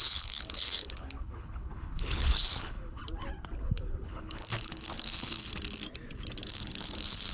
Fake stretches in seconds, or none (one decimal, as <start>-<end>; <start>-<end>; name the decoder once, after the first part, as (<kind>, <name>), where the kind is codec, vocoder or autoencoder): 0.0-3.0 (codec, HILCodec); 3.6-5.4; 6.5-7.3